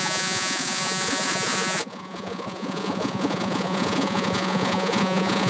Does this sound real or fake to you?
fake